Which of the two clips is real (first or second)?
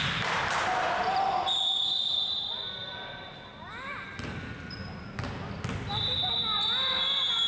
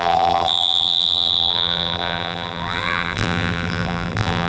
first